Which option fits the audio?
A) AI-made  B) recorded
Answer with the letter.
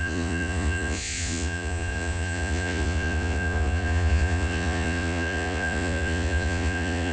A